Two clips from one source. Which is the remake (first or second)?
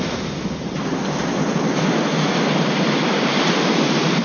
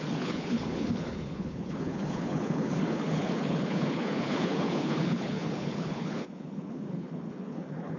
second